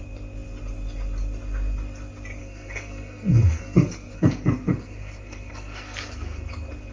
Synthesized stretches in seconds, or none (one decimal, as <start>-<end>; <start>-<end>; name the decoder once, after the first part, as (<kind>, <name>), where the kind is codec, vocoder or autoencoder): 2.4-6.5 (codec, SNAC)